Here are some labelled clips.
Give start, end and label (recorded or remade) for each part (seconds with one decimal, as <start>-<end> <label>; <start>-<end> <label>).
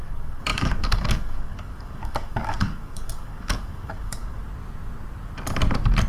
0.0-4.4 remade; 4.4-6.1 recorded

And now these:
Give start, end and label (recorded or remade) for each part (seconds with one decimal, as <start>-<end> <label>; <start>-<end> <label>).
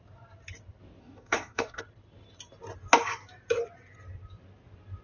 0.0-1.0 recorded; 1.0-1.8 remade; 1.8-5.0 recorded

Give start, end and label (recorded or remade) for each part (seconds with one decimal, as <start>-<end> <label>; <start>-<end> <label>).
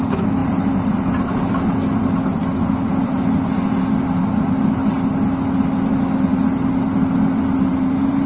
0.0-8.3 recorded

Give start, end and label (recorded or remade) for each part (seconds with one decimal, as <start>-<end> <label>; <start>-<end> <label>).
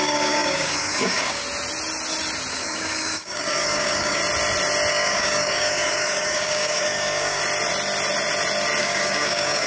0.0-1.4 remade; 1.4-2.5 recorded; 2.5-4.2 remade; 4.2-4.9 recorded; 4.9-7.4 remade; 7.4-8.8 recorded; 8.8-9.7 remade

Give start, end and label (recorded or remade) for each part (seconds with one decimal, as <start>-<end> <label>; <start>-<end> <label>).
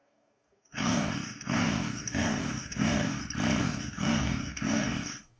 0.0-3.2 remade; 3.2-3.6 recorded; 3.6-5.4 remade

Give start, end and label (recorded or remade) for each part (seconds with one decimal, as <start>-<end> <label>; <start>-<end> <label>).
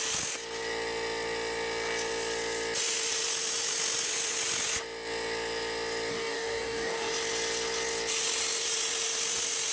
0.0-6.1 recorded; 6.1-7.1 remade; 7.1-9.7 recorded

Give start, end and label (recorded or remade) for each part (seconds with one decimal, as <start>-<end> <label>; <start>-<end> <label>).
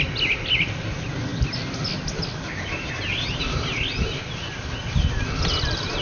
0.0-6.0 recorded